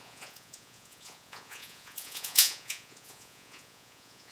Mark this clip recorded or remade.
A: remade